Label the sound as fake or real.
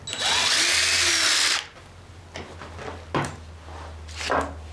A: real